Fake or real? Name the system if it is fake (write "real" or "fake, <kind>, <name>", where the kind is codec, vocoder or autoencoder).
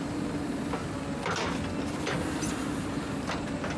real